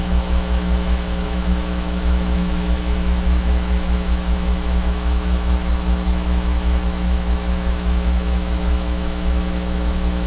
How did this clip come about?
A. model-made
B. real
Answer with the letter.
A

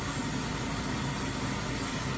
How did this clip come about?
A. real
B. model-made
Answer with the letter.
A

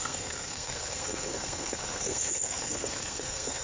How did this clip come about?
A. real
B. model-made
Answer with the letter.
B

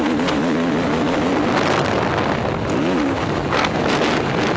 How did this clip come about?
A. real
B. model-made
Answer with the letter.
A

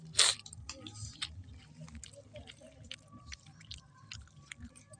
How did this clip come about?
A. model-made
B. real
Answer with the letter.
B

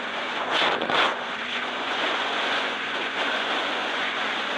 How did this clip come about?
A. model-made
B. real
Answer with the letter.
A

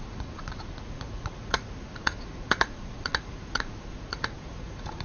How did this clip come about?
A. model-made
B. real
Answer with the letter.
A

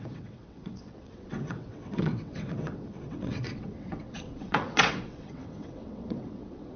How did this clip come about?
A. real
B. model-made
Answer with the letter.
B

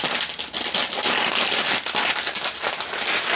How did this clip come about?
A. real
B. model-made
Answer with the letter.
A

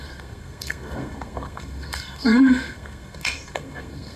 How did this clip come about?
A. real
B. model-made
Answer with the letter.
B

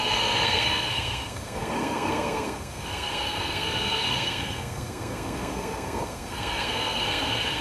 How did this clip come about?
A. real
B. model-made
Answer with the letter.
B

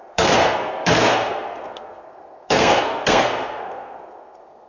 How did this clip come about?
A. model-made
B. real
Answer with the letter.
A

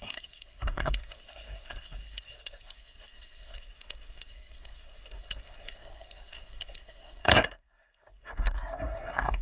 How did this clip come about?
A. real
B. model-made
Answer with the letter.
B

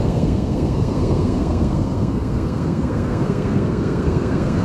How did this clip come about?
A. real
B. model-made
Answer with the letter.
B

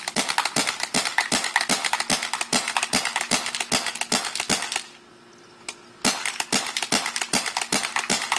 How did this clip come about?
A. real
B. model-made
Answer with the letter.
A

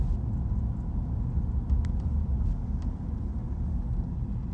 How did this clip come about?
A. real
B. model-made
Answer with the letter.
A